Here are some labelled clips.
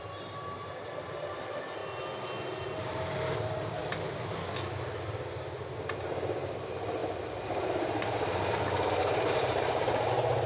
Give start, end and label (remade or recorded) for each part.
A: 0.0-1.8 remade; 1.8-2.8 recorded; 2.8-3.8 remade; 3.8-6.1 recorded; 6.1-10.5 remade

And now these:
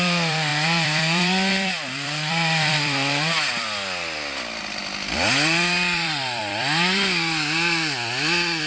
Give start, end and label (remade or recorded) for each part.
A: 0.0-8.7 remade

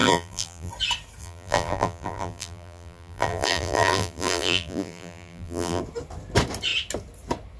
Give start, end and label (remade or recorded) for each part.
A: 0.0-0.7 remade; 0.7-1.2 recorded; 1.2-5.8 remade; 5.8-7.6 recorded